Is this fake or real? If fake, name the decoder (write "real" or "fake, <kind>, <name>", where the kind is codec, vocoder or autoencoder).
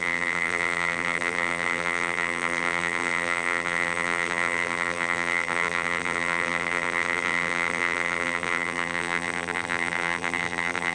fake, vocoder, BigVGAN v2